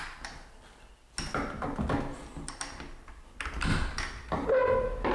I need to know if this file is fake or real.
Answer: real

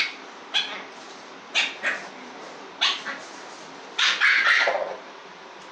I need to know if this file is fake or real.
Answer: real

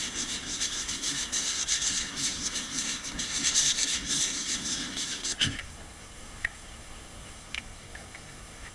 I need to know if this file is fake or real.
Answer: fake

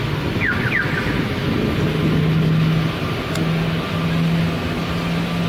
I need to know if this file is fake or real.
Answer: real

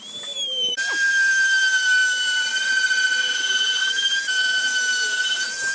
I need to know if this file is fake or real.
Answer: fake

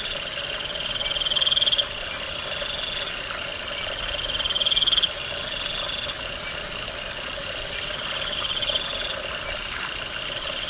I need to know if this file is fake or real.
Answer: real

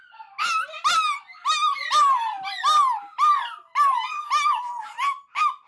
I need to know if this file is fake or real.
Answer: real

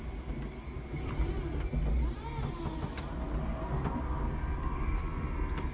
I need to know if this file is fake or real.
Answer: real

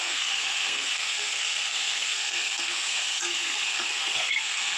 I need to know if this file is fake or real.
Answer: fake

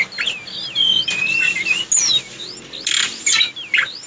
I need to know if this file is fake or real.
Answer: real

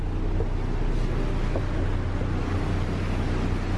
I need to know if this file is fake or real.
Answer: real